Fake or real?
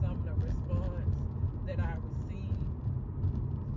real